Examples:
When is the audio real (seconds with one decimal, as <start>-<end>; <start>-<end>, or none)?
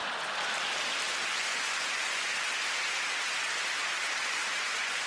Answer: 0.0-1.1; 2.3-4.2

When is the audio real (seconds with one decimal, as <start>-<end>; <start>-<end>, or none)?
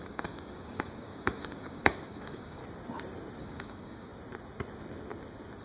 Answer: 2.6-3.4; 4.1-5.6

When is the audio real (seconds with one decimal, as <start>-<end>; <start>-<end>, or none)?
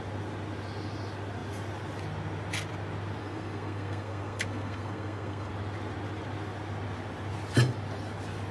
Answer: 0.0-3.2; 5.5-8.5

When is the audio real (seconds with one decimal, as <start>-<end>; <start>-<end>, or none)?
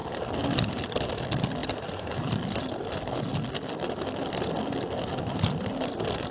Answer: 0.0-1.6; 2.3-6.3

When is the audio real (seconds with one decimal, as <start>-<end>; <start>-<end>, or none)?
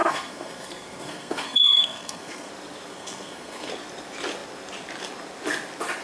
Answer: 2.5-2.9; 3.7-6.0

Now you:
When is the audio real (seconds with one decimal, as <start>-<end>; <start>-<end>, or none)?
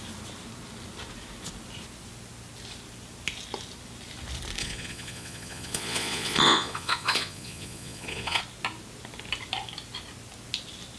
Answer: 0.0-4.6; 8.4-11.0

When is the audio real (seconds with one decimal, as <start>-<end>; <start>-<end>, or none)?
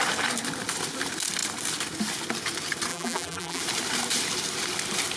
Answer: 0.0-2.9; 3.6-5.2